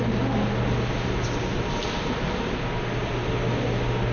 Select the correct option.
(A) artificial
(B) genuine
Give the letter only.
B